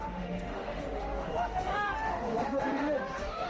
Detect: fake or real fake